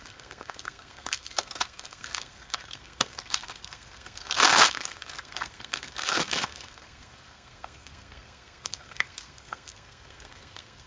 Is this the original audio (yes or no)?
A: no